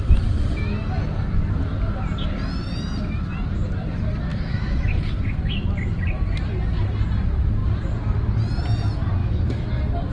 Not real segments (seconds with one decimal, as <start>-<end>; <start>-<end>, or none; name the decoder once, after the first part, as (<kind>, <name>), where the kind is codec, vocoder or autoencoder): 4.3-4.9 (autoencoder, DAC-VAE); 9.2-9.7